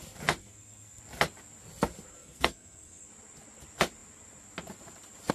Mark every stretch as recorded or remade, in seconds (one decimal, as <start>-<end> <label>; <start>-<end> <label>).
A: 0.0-0.4 recorded; 0.4-1.0 remade; 1.0-2.1 recorded; 2.1-3.1 remade; 3.1-5.3 recorded